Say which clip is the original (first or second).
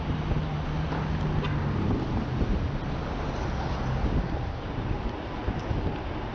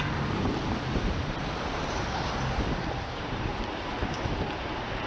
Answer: first